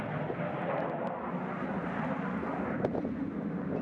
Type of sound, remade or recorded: recorded